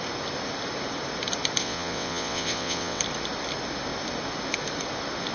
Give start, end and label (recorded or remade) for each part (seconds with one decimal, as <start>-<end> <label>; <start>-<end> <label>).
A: 0.0-1.6 recorded; 1.6-3.0 remade; 3.0-5.3 recorded